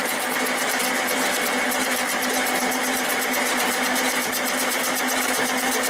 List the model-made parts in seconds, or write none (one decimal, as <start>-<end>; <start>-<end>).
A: none

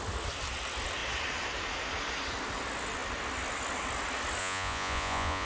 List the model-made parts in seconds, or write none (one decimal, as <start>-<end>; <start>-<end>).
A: 4.4-5.5

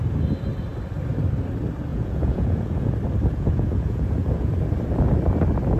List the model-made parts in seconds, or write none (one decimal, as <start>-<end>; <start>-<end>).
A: 1.9-2.9; 3.3-4.5

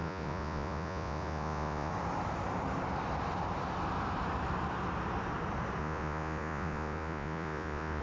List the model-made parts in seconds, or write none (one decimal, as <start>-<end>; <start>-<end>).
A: 0.0-1.9; 5.8-8.0

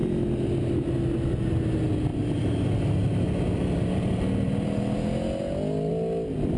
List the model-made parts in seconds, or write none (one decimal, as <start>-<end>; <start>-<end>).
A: none

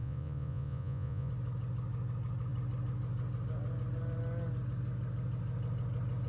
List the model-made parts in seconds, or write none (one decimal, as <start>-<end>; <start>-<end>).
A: 0.0-1.3

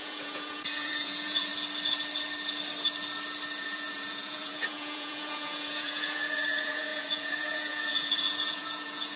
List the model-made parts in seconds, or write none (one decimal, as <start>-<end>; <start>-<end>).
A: 0.0-1.5; 3.6-9.2